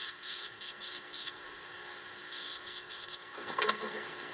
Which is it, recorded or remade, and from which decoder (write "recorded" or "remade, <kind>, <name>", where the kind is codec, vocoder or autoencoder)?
remade, codec, SNAC